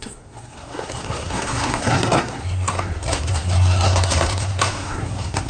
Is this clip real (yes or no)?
no